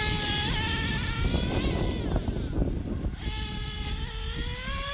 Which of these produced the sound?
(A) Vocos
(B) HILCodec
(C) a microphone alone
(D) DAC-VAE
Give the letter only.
C